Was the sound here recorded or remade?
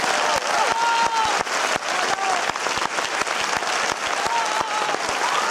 recorded